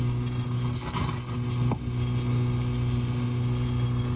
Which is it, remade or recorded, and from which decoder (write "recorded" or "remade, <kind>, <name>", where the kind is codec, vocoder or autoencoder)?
recorded